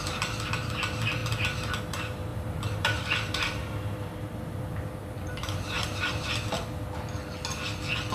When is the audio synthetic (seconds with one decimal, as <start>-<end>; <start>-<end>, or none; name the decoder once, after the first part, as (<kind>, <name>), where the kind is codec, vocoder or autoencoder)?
2.3-6.3 (vocoder, BigVGAN v2)